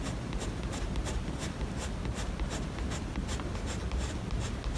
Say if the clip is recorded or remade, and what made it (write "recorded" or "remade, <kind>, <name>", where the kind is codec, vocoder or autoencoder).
recorded